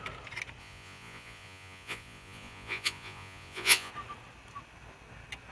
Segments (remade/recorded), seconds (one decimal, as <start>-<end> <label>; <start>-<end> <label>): 0.0-0.6 recorded; 0.6-3.9 remade; 3.9-5.5 recorded